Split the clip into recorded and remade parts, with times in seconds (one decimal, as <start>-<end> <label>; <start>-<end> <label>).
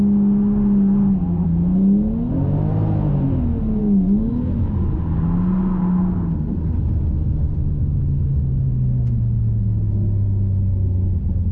0.0-11.5 recorded